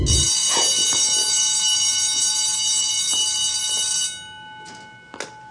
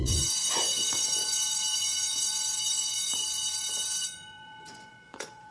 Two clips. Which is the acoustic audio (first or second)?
first